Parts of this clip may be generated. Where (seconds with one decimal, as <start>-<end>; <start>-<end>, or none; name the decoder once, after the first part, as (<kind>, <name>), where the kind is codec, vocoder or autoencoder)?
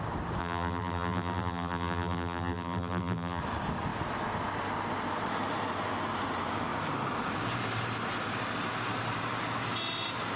0.4-3.4 (vocoder, BigVGAN v2)